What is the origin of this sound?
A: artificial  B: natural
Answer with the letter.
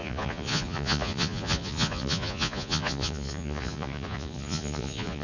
A